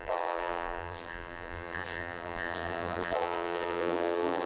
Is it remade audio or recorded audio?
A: remade